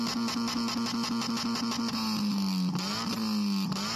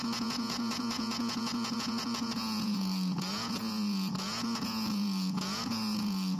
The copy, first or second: second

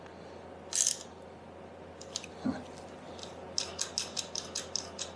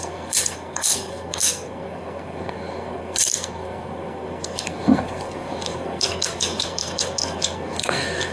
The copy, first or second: second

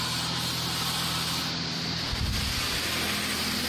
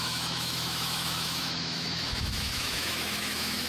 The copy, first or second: second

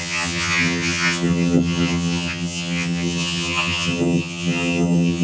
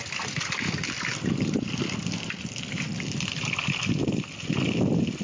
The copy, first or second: first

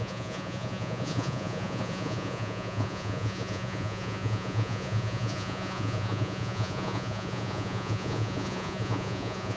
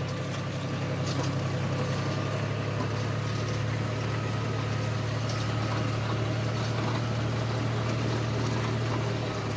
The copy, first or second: first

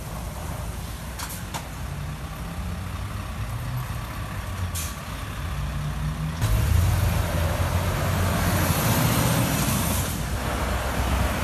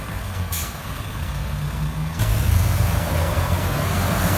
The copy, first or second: second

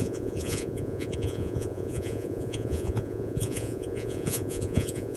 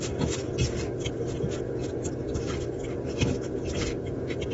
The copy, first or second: first